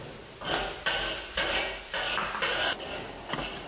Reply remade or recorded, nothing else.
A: recorded